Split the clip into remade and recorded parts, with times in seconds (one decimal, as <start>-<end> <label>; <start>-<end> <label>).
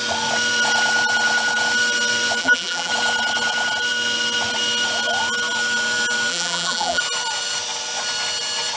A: 0.0-2.4 recorded; 2.4-2.9 remade; 2.9-6.3 recorded; 6.3-7.0 remade; 7.0-8.8 recorded